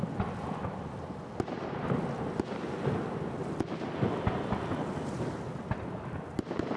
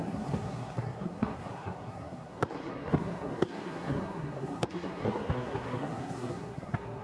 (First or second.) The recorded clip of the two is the first